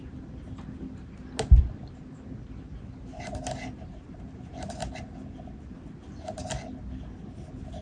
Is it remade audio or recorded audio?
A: recorded